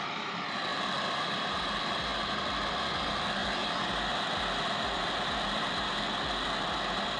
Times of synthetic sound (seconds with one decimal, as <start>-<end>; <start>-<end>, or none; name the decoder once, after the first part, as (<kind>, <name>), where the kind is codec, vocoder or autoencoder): 0.0-2.1 (vocoder, BigVGAN v2); 3.0-7.2